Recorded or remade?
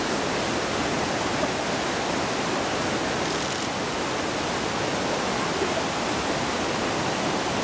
recorded